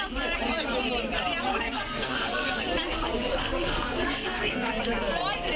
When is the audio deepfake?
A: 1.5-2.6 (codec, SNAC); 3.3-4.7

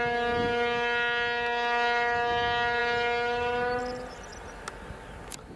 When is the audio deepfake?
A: none

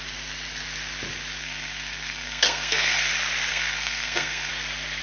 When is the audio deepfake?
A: 1.4-3.1 (codec, SNAC); 3.5-4.5

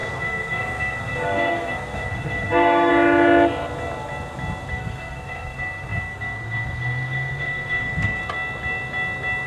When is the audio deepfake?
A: 0.0-2.9 (codec, SNAC); 4.7-8.2